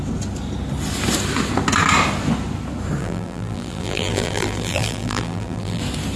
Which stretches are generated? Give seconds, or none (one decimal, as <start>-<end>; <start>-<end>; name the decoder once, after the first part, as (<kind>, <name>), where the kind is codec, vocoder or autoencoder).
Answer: 3.0-5.8 (vocoder, BigVGAN v2)